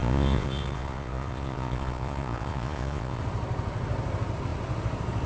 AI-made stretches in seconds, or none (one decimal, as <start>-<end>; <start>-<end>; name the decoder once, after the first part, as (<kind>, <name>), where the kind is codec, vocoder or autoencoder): 0.0-3.2 (vocoder, Vocos)

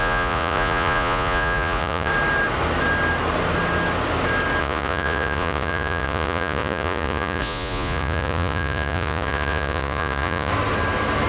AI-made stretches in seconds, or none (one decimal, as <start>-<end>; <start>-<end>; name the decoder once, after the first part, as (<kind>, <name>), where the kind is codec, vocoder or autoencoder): 0.0-2.1 (vocoder, Vocos); 4.6-10.5